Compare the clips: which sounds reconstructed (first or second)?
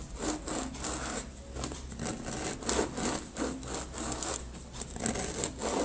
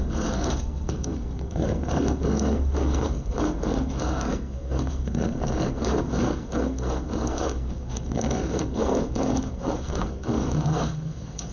second